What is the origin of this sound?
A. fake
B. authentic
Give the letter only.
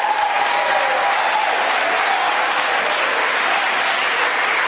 B